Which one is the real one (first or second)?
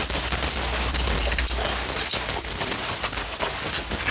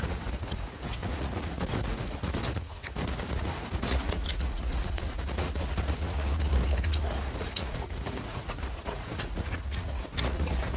first